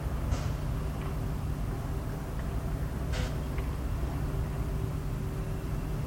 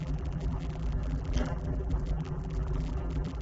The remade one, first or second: second